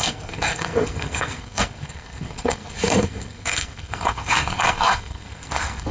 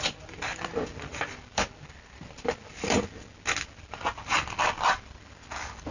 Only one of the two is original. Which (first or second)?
second